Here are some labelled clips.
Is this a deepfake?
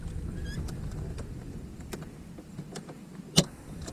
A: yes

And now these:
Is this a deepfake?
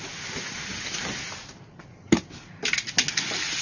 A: no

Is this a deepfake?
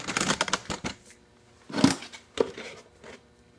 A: no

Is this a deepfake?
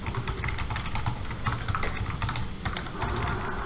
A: no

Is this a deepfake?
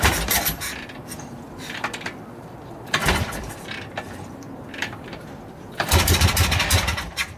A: yes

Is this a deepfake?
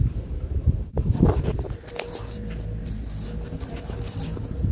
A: no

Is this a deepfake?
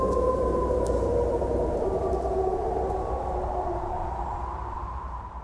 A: yes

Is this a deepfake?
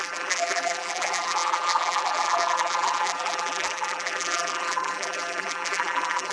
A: yes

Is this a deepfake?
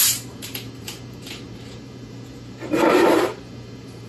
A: yes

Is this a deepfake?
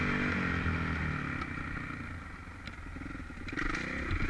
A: no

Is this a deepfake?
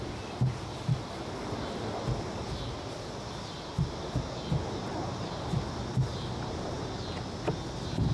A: no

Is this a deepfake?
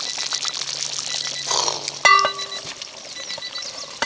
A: no